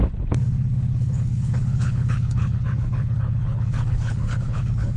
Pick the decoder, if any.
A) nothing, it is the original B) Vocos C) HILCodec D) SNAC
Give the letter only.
C